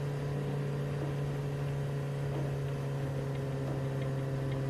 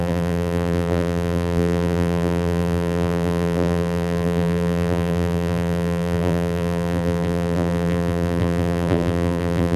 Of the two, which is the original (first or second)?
first